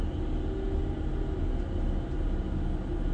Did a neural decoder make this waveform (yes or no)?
no